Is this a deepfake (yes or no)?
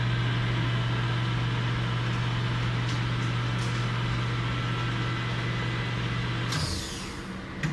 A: no